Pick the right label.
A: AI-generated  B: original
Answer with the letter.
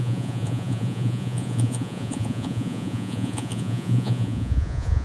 A